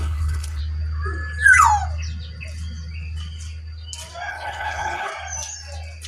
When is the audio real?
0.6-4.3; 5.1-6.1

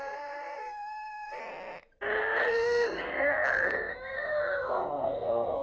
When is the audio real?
1.4-2.2